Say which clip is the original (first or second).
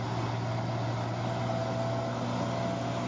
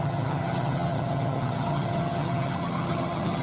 first